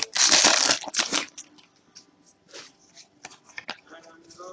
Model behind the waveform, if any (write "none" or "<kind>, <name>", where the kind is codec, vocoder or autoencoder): none